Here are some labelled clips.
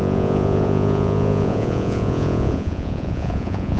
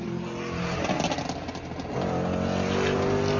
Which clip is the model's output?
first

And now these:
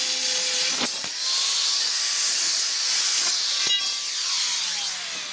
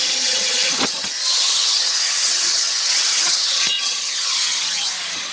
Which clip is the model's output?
second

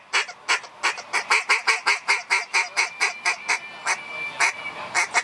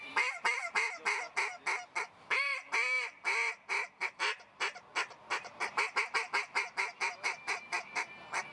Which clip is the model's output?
second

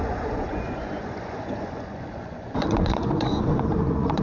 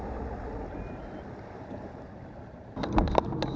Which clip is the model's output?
first